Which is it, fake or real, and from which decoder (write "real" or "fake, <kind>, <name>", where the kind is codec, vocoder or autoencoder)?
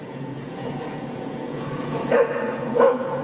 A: fake, vocoder, Vocos